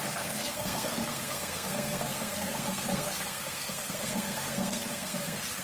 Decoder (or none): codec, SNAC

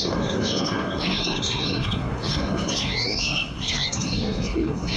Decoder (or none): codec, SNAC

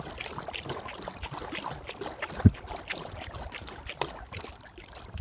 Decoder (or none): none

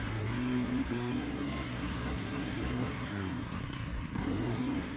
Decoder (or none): codec, SNAC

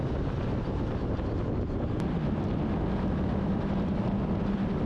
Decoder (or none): none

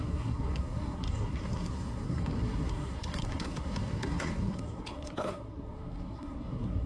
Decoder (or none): codec, SNAC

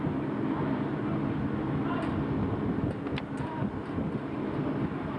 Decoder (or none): none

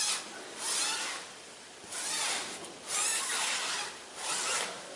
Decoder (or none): none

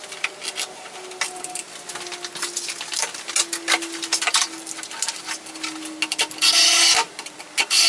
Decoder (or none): none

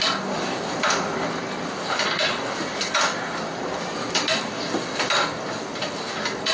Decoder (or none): none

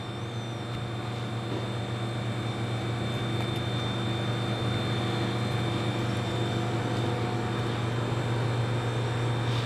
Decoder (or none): none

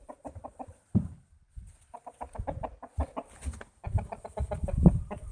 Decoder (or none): none